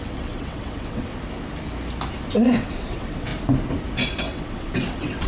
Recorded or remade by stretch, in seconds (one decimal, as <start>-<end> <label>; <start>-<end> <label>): 0.0-1.1 remade; 1.1-2.3 recorded; 2.3-3.3 remade; 3.3-4.2 recorded; 4.2-5.3 remade